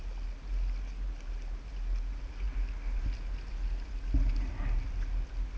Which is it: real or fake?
real